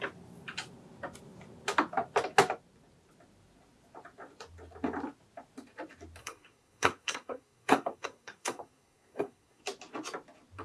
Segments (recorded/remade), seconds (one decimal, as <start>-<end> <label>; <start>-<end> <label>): 0.0-6.2 recorded; 6.2-9.6 remade; 9.6-10.6 recorded